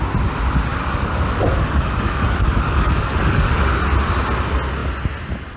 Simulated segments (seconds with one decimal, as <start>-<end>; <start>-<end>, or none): 0.7-3.7